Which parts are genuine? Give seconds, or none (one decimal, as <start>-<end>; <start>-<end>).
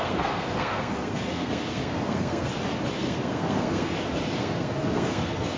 2.5-3.0; 3.9-4.4